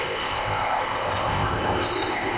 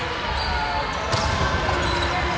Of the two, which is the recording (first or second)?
second